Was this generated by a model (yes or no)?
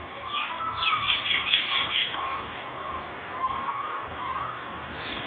yes